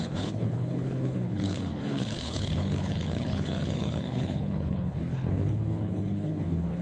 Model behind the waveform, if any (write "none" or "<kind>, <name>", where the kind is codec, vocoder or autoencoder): codec, HILCodec